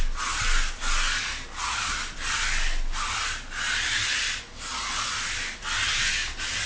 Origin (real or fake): real